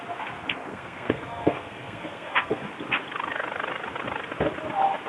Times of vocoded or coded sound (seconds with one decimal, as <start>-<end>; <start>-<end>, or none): 0.7-2.7